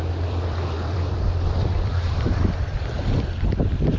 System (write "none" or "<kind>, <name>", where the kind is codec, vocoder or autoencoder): vocoder, BigVGAN v2